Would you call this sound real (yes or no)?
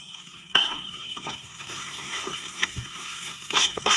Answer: no